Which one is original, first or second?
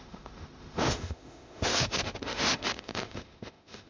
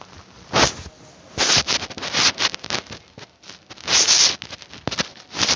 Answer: second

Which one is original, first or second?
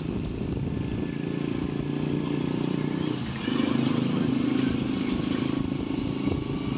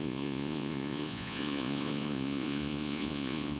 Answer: first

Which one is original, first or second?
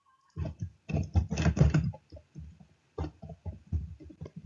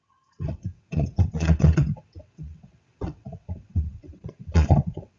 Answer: first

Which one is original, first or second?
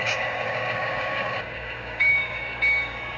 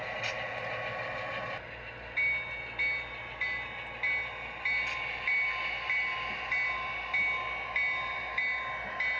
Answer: second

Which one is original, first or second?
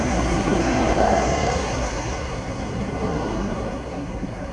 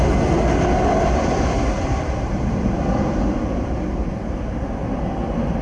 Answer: second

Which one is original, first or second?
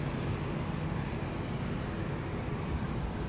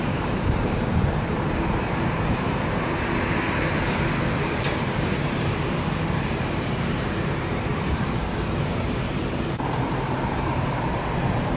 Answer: first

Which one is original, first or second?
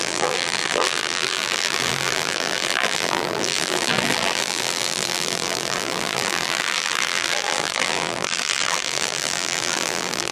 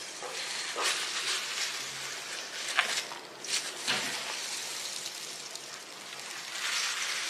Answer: second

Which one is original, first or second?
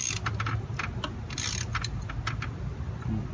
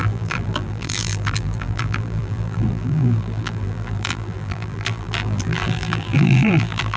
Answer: first